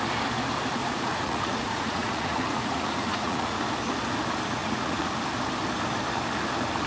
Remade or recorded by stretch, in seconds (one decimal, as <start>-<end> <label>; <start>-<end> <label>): 0.0-0.8 recorded; 0.8-3.6 remade; 3.6-4.6 recorded; 4.6-5.1 remade; 5.1-6.9 recorded